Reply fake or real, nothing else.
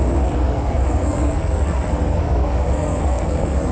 fake